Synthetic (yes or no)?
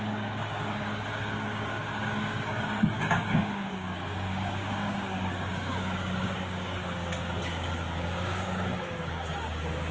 yes